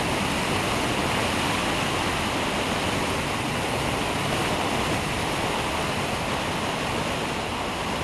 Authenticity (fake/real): real